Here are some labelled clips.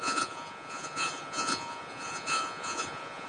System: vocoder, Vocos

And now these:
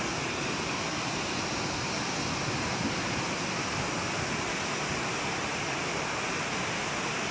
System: none